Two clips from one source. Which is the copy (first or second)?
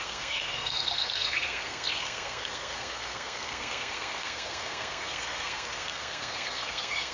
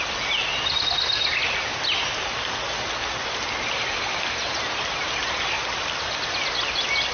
first